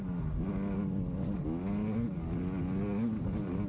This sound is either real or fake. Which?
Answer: real